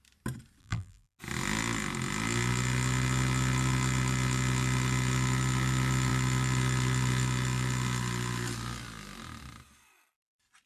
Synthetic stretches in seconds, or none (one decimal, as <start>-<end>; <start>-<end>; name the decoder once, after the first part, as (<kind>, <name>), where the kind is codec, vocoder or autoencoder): 0.6-1.2 (vocoder, BigVGAN v2)